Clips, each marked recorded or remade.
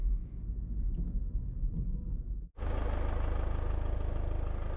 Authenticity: recorded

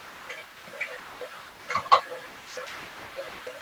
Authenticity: remade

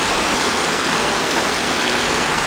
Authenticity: remade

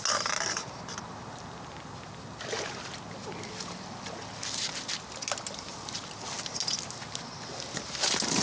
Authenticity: recorded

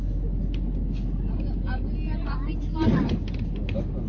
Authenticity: recorded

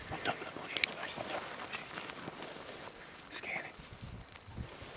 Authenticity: recorded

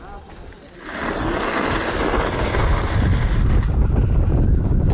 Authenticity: recorded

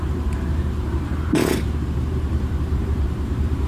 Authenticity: remade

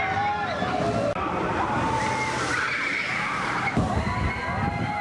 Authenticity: recorded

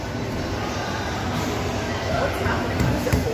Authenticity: recorded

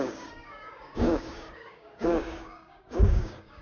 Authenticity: remade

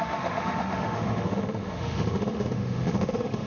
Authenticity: remade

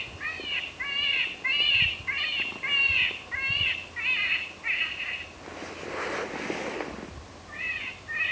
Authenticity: recorded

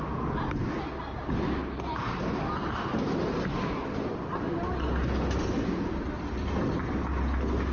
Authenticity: recorded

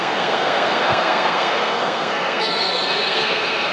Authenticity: remade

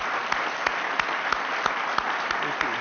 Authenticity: remade